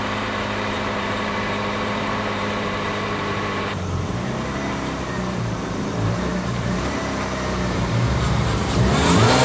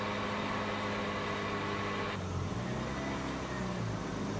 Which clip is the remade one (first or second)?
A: first